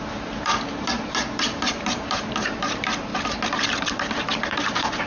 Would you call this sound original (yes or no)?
no